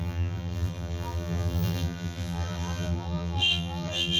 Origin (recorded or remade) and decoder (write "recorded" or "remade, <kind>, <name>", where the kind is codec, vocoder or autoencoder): remade, vocoder, BigVGAN v2